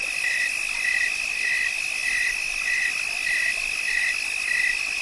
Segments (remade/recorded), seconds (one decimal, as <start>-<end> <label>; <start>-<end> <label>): 0.0-5.0 recorded